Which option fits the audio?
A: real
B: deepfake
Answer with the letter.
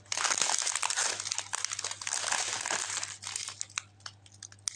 A